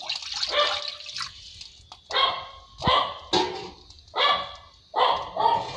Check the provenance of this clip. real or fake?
real